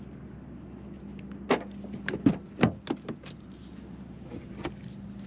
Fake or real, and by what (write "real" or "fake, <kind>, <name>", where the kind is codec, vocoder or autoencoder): real